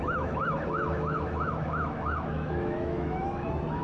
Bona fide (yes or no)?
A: no